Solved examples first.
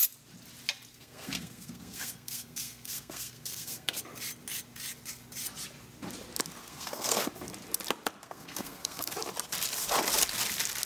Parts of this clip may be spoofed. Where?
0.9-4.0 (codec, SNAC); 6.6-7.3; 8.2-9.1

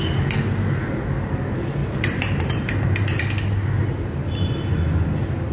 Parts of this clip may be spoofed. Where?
1.8-3.2 (vocoder, BigVGAN v2)

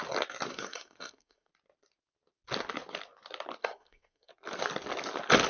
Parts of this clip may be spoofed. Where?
0.5-1.5 (codec, SNAC); 3.6-4.3